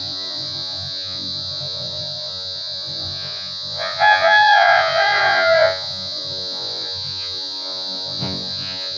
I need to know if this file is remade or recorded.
remade